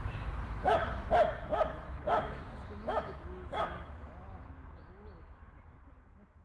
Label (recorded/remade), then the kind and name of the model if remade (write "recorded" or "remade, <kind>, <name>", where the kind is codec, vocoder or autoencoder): remade, autoencoder, DAC-VAE